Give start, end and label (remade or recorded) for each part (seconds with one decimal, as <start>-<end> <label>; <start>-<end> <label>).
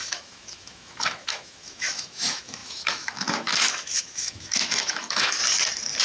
0.0-5.4 remade; 5.4-6.0 recorded